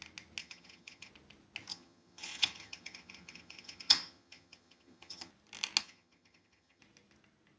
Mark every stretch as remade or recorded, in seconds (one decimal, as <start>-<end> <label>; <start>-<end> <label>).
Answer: 0.0-0.4 recorded; 0.4-1.1 remade; 1.1-1.7 recorded; 1.7-5.3 remade; 5.3-5.8 recorded; 5.8-6.8 remade; 6.8-7.6 recorded